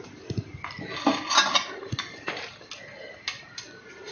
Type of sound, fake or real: real